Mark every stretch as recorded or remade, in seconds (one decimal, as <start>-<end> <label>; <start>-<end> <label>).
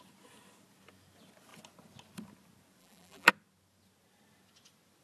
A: 0.0-2.8 recorded; 2.8-3.3 remade; 3.3-5.0 recorded